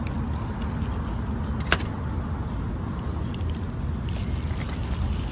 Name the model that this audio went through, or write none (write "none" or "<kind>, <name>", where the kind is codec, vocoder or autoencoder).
none